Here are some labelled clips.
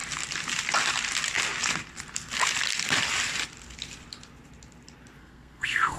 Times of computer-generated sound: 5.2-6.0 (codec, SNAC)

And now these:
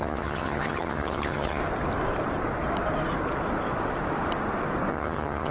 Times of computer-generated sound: 0.0-1.6 (vocoder, HiFi-GAN); 4.9-5.5

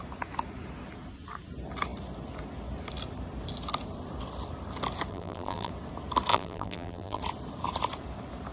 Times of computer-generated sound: 5.1-5.7 (vocoder, BigVGAN v2); 6.3-7.2

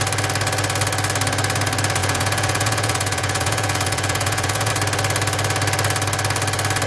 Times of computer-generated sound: 2.0-4.7 (vocoder, Vocos)

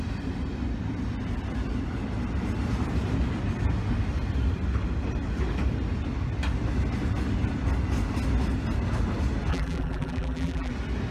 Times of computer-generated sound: 9.5-10.7 (vocoder, BigVGAN v2)

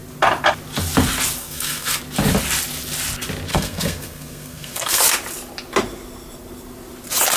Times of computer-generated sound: 1.4-2.0 (codec, SNAC); 3.5-5.0